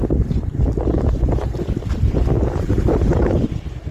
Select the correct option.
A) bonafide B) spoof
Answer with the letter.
A